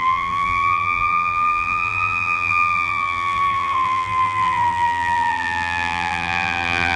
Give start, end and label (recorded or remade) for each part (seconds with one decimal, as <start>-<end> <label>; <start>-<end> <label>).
0.0-7.0 remade